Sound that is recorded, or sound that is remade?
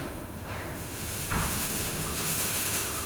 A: remade